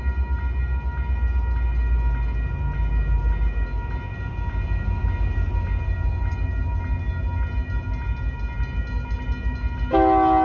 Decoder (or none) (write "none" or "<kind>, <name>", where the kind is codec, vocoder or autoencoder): none